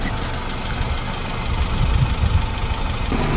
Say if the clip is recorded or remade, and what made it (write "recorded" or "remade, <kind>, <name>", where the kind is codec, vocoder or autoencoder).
recorded